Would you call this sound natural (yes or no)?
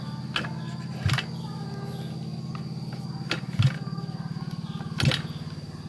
yes